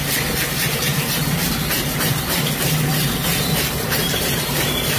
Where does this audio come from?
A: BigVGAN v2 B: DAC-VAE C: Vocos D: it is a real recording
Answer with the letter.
D